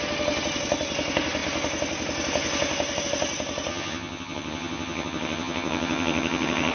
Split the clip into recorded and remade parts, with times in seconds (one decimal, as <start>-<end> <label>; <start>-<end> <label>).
0.0-3.7 recorded; 3.7-6.7 remade